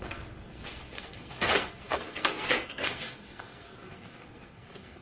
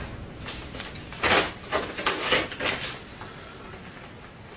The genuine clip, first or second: second